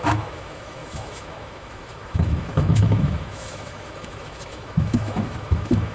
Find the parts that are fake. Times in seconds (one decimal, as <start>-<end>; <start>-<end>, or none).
0.0-5.9